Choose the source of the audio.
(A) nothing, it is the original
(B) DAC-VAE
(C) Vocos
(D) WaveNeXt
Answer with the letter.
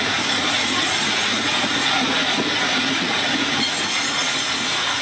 C